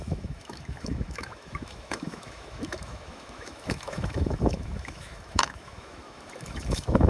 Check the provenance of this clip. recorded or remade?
remade